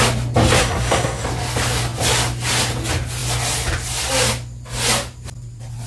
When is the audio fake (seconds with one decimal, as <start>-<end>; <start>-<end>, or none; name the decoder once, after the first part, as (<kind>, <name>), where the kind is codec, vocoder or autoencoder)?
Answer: 0.6-1.2 (codec, SNAC)